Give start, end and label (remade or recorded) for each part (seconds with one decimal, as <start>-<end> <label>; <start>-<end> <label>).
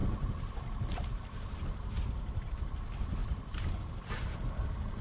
0.0-2.5 remade; 2.5-3.2 recorded; 3.2-3.8 remade; 3.8-5.0 recorded